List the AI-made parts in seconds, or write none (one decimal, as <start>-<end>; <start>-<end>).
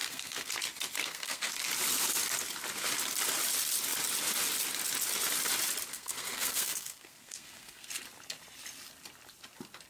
0.0-0.5; 1.0-1.5; 5.9-7.9